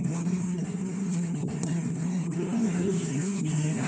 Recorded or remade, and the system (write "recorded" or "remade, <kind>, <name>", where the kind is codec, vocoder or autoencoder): remade, codec, SNAC